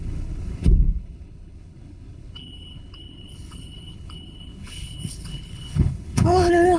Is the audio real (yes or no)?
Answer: no